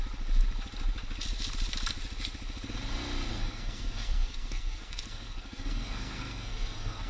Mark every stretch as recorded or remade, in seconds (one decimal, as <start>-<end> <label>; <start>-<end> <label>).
0.0-3.3 recorded; 3.3-7.1 remade